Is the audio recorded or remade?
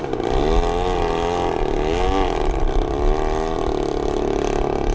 recorded